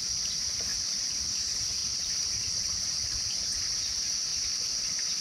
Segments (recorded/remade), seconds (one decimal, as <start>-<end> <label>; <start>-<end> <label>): 0.0-0.7 recorded; 0.7-1.2 remade; 1.2-1.8 recorded; 1.8-3.3 remade; 3.3-5.2 recorded